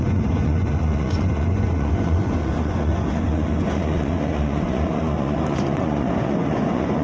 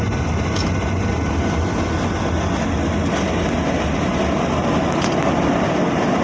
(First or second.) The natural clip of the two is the second